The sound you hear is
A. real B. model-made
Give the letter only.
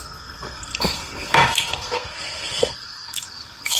B